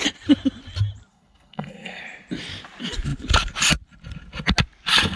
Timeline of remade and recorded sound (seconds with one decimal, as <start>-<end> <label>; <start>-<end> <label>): 0.0-1.1 recorded; 1.1-2.0 remade; 2.0-5.2 recorded